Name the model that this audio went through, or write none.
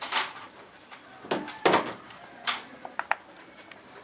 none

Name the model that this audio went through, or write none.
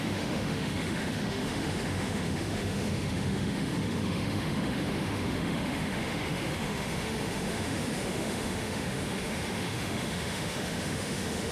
autoencoder, DAC-VAE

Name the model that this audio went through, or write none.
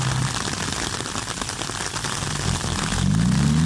none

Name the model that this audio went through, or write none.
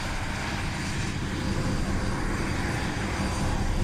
none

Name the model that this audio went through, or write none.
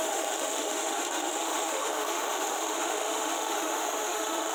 autoencoder, DAC-VAE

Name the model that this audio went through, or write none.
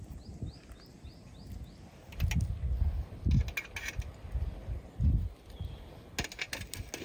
none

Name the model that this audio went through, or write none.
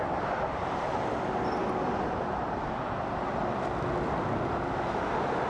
none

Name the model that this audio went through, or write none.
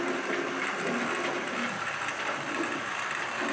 none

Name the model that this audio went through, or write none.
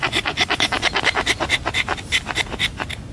none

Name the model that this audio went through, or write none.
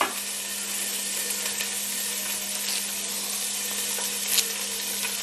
none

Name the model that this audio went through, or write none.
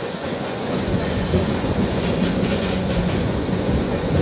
vocoder, Vocos